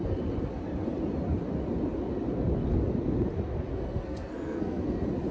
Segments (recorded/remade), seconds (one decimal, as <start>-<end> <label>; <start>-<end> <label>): 0.0-3.7 recorded; 3.7-4.8 remade; 4.8-5.3 recorded

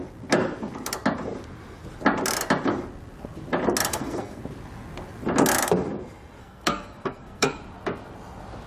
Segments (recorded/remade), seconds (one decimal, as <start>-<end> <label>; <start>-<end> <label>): 0.0-3.9 recorded; 3.9-4.4 remade; 4.4-6.4 recorded; 6.4-7.6 remade; 7.6-8.7 recorded

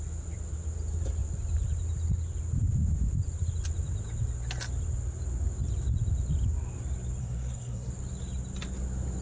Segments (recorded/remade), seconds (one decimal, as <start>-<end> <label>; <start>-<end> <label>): 0.0-7.2 recorded; 7.2-7.9 remade; 7.9-9.2 recorded

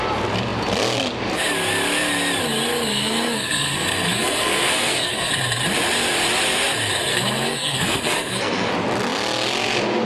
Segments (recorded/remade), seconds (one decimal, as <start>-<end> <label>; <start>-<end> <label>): 0.0-2.9 recorded; 2.9-5.3 remade; 5.3-7.1 recorded; 7.1-8.7 remade; 8.7-10.1 recorded

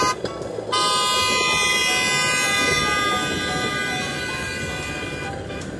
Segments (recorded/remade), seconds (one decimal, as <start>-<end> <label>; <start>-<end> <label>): 0.0-5.8 recorded

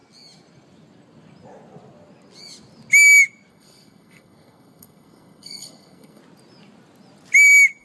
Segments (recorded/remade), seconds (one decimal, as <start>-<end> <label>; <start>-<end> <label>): 0.0-3.5 recorded; 3.5-6.2 remade; 6.2-7.8 recorded

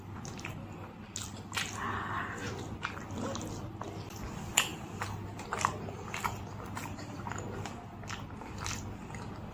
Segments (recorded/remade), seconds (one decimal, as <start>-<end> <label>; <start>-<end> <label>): 0.0-9.5 recorded